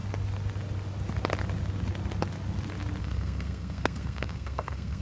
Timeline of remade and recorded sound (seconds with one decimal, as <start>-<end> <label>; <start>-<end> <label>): 0.0-3.0 recorded; 3.0-5.0 remade